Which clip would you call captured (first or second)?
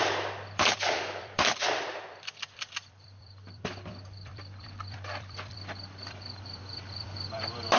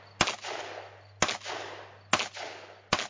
second